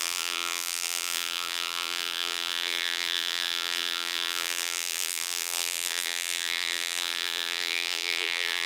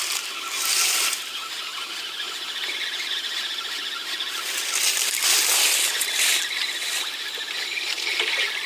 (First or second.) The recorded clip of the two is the second